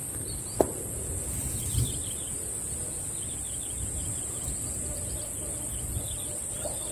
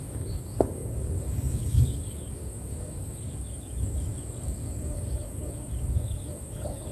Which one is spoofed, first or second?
second